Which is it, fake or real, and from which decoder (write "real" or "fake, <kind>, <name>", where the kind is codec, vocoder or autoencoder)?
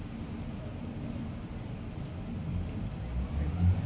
real